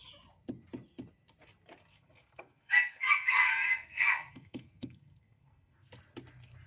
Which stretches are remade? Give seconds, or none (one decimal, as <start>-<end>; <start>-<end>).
1.9-5.9